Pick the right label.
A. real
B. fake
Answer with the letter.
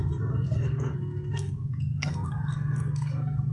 B